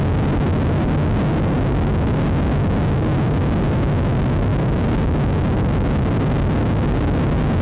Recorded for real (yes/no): yes